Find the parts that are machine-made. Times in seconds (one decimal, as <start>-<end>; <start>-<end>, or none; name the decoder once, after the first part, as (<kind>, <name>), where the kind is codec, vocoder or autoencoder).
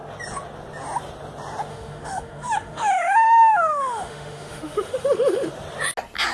1.7-5.5 (autoencoder, DAC-VAE)